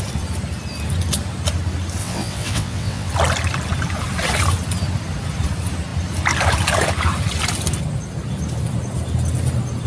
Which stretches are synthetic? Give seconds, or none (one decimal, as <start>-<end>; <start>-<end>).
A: 2.0-3.1